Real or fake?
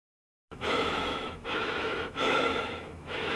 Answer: fake